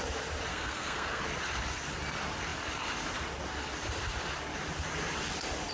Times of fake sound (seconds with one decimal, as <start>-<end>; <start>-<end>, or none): 0.5-1.2